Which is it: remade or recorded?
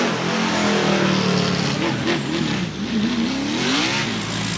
recorded